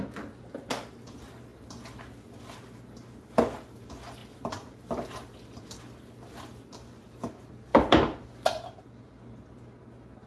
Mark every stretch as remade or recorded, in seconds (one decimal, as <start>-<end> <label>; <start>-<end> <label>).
0.0-1.5 recorded; 1.5-3.0 remade; 3.0-4.2 recorded; 4.2-6.6 remade; 6.6-7.7 recorded; 7.7-8.8 remade; 8.8-10.3 recorded